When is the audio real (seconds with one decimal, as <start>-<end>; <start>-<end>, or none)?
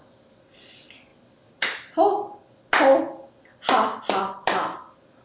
0.0-5.2